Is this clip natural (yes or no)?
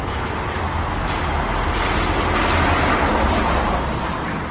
yes